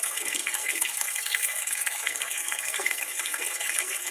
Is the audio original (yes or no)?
no